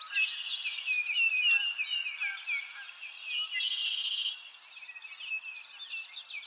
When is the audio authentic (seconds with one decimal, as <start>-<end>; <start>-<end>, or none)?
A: 0.0-6.5